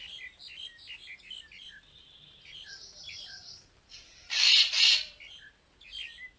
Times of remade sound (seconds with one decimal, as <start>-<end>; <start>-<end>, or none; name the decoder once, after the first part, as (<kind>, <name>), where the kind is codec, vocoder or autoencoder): 3.4-4.7 (vocoder, BigVGAN v2)